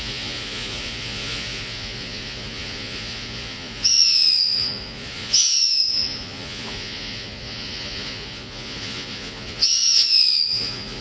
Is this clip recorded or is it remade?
remade